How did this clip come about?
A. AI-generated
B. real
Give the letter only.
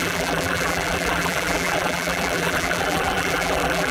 A